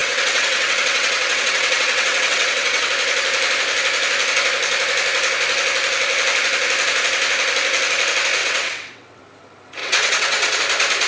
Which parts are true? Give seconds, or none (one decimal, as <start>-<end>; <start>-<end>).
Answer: 2.9-8.4; 9.2-9.8; 10.6-11.1